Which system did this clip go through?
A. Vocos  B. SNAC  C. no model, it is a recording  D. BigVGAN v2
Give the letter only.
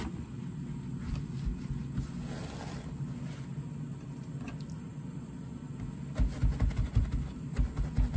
C